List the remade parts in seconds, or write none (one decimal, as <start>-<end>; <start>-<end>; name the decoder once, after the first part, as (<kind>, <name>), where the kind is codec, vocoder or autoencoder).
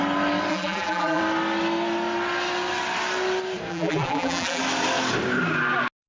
0.5-1.2 (vocoder, BigVGAN v2); 3.7-4.6